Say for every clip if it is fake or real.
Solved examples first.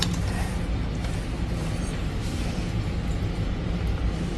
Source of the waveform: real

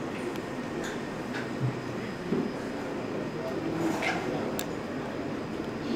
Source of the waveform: real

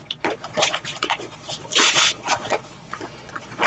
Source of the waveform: fake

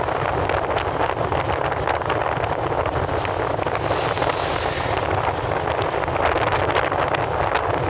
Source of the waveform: real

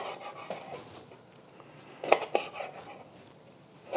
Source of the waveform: real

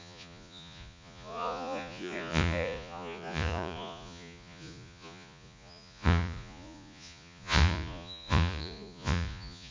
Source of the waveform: fake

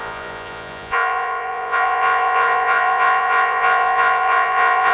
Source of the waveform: fake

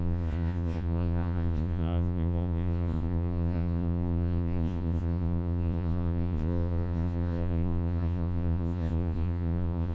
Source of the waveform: fake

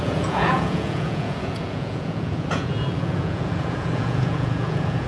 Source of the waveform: fake